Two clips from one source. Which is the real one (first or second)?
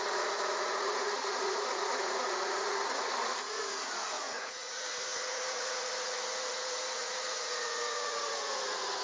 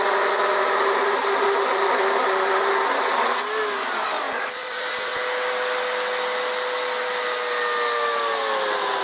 second